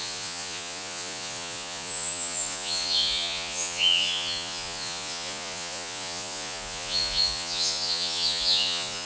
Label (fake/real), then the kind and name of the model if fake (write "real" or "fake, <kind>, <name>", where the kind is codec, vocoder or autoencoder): fake, vocoder, Vocos